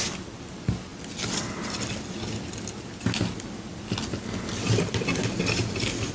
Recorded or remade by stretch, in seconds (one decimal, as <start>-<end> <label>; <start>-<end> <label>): 0.0-6.1 recorded